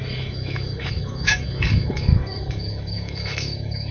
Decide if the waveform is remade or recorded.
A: remade